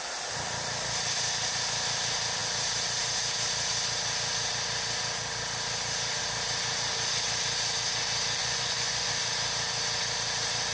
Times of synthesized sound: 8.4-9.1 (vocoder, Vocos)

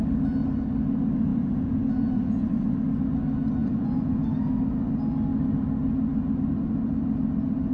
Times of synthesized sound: 1.3-2.5 (vocoder, Vocos); 3.6-4.6

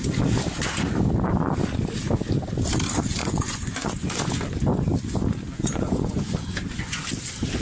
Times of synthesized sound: 3.2-4.4 (vocoder, Vocos); 5.6-7.1

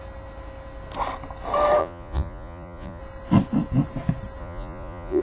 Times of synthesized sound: 1.8-3.0 (vocoder, Vocos); 4.4-5.2

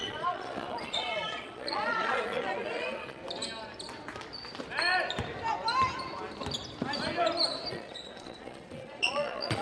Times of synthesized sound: 0.0-3.2 (vocoder, Vocos); 7.7-9.6

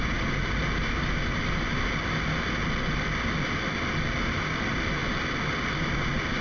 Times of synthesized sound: none